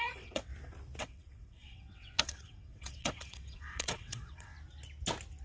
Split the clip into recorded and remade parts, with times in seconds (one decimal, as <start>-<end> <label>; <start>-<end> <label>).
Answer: 0.0-0.5 remade; 0.5-1.0 recorded; 1.0-4.5 remade; 4.5-5.4 recorded